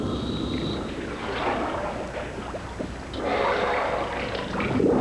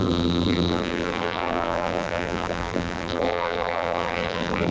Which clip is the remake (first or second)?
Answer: second